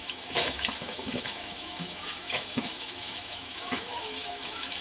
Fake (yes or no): yes